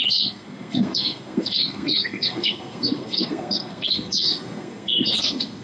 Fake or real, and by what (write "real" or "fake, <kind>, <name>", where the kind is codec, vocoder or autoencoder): fake, codec, SNAC